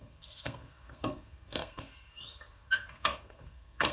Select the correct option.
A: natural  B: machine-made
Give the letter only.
B